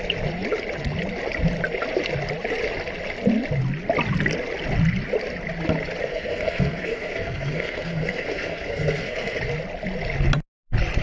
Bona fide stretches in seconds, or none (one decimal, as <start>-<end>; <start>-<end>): 0.0-6.1; 9.4-11.0